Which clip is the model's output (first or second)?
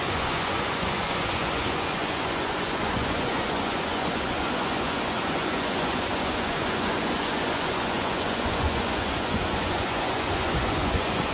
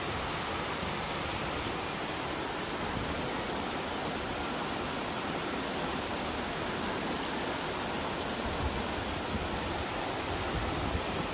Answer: first